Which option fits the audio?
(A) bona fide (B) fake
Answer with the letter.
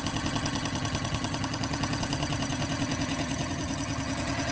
B